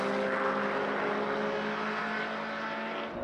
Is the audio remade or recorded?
recorded